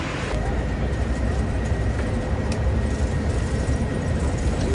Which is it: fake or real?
fake